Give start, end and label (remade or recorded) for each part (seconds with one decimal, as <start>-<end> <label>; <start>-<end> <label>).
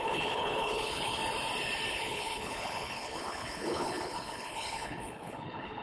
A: 0.0-1.2 remade; 1.2-1.9 recorded; 1.9-5.8 remade